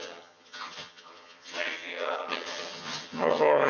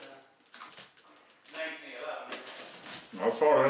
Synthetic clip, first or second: first